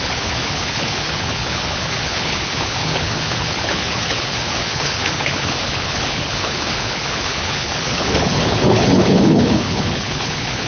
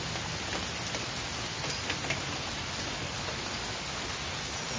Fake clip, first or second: first